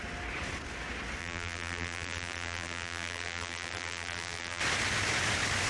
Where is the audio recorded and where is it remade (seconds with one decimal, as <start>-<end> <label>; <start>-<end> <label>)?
0.0-1.2 recorded; 1.2-4.6 remade; 4.6-5.7 recorded